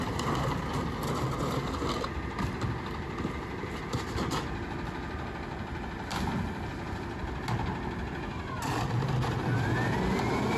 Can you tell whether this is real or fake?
real